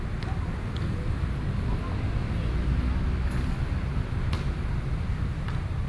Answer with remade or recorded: recorded